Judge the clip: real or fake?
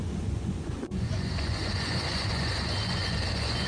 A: fake